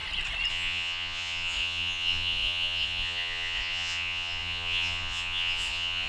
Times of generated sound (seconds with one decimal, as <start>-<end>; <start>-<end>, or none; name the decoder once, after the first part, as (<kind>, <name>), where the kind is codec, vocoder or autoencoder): 0.5-6.1 (vocoder, Vocos)